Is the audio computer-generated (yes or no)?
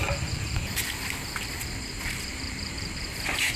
yes